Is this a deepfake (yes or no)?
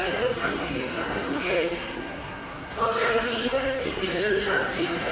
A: yes